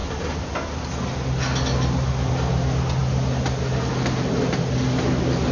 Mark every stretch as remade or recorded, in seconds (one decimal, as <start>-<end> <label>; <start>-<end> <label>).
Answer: 0.0-5.5 recorded